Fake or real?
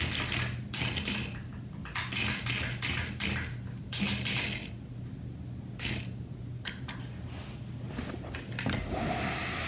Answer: real